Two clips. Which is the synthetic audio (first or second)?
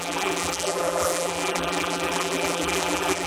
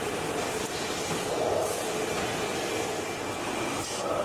first